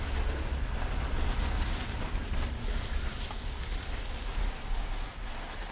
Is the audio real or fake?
real